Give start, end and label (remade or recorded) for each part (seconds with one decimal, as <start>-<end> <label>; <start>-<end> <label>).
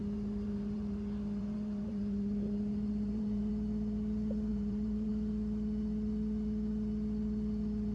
0.0-3.5 remade; 3.5-4.5 recorded; 4.5-5.1 remade; 5.1-7.9 recorded